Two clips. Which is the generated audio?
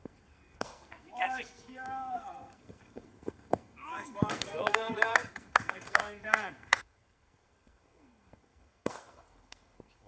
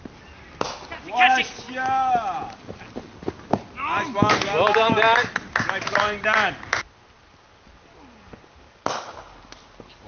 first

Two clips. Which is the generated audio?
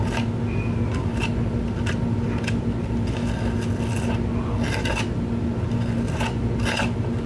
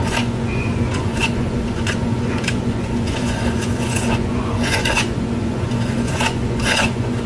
second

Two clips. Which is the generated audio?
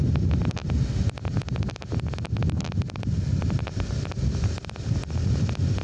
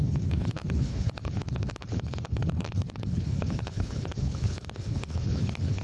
second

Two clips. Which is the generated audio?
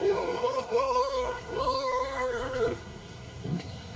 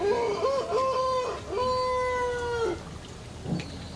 first